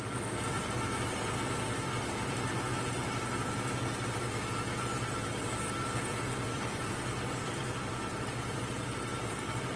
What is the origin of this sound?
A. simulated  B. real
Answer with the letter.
A